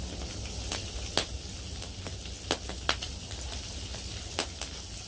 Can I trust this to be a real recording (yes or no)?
yes